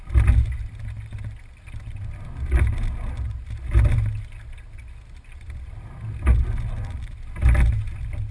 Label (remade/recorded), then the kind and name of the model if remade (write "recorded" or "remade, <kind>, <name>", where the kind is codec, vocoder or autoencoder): recorded